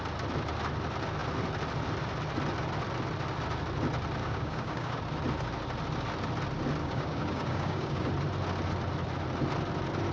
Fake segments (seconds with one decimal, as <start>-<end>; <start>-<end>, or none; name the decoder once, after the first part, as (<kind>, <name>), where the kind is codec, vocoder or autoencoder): 4.2-5.0 (codec, DAC); 6.8-8.1